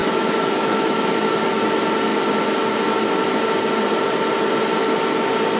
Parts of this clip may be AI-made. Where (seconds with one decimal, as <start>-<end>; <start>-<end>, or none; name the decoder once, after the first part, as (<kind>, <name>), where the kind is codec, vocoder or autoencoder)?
0.0-1.1 (autoencoder, DAC-VAE)